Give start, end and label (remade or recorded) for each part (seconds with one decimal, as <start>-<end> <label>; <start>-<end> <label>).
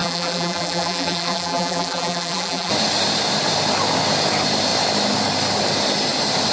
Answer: 0.0-2.7 remade; 2.7-6.5 recorded